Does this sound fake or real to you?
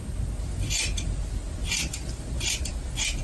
real